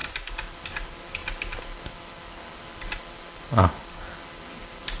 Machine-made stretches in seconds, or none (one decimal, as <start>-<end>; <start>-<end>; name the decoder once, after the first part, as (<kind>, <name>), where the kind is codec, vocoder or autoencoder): 0.0-0.6 (vocoder, BigVGAN v2)